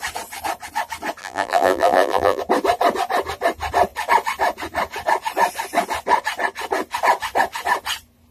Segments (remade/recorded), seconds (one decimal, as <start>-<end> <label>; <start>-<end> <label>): 0.0-1.2 recorded; 1.2-2.4 remade; 2.4-8.3 recorded